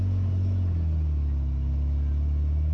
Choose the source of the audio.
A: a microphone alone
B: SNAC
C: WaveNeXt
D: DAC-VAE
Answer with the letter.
A